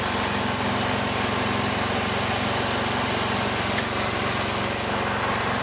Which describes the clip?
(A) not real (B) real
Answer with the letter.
B